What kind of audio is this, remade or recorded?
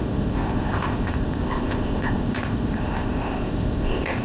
remade